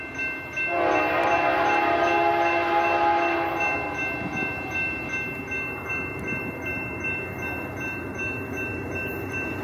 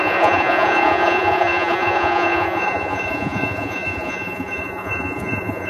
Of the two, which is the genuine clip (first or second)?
first